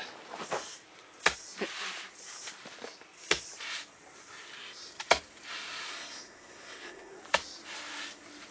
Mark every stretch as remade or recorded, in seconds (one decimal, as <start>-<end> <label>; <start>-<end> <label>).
0.0-5.9 recorded; 5.9-7.2 remade; 7.2-8.5 recorded

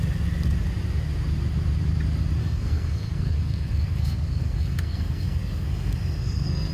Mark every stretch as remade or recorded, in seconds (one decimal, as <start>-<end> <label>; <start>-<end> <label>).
0.0-2.4 recorded; 2.4-6.7 remade

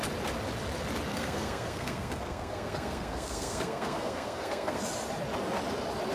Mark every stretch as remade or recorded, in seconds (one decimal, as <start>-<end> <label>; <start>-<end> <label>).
0.0-1.1 recorded; 1.1-4.8 remade; 4.8-6.1 recorded

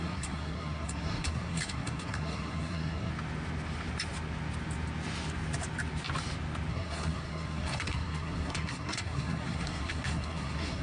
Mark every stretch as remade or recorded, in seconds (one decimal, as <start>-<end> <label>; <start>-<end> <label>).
0.0-3.1 remade; 3.1-6.7 recorded; 6.7-10.8 remade

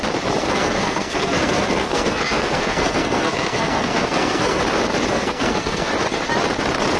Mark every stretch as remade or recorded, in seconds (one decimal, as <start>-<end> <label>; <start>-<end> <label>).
0.0-0.4 recorded; 0.4-4.6 remade; 4.6-5.1 recorded; 5.1-5.9 remade; 5.9-7.0 recorded

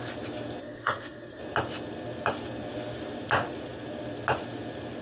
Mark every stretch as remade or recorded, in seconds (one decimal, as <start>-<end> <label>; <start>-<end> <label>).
0.0-0.6 recorded; 0.6-1.4 remade; 1.4-5.0 recorded